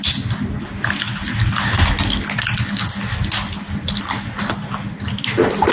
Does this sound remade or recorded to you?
recorded